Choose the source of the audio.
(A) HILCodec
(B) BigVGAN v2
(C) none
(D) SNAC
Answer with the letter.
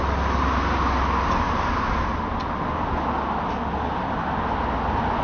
C